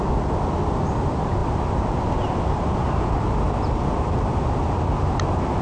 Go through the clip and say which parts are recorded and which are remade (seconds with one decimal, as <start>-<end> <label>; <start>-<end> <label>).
0.0-5.6 recorded